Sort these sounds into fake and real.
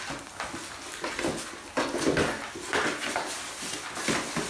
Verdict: real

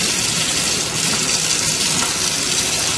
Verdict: real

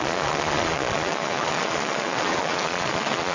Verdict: fake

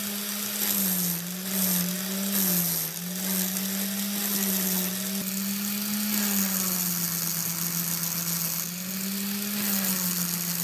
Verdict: real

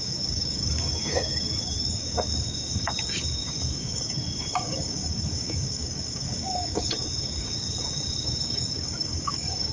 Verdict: fake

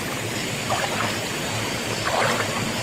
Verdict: fake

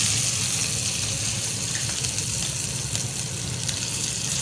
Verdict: real